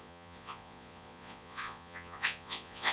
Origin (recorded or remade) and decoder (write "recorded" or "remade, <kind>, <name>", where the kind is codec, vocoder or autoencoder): remade, vocoder, Vocos